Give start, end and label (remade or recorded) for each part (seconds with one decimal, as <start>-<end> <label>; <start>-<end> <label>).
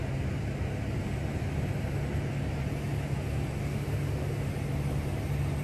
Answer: 0.0-3.6 recorded; 3.6-4.5 remade; 4.5-5.6 recorded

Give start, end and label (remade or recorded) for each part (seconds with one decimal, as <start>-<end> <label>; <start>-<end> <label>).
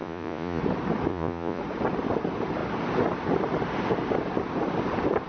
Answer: 0.0-0.6 remade; 0.6-1.1 recorded; 1.1-1.6 remade; 1.6-5.3 recorded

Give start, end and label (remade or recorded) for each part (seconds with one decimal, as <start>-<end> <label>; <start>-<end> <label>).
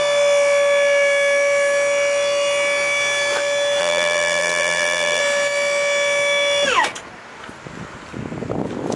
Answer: 0.0-3.8 recorded; 3.8-5.2 remade; 5.2-9.0 recorded